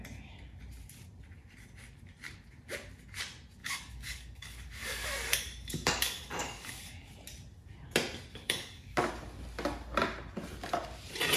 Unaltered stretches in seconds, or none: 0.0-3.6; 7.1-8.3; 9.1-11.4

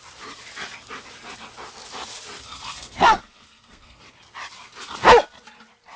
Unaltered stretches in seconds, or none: 0.0-2.4; 4.0-6.0

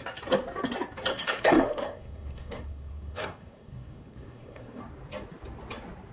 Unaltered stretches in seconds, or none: 0.0-1.1; 4.8-6.1

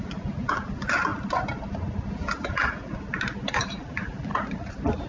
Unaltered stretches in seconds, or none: 1.1-2.1; 2.9-3.5; 4.3-5.1